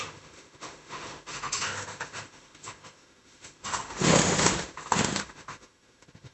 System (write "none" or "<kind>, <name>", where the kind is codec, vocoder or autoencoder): autoencoder, DAC-VAE